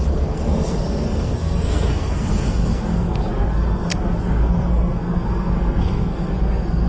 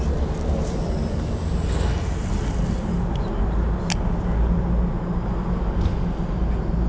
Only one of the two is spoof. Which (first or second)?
first